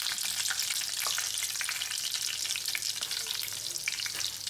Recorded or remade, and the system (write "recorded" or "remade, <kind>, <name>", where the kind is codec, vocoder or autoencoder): recorded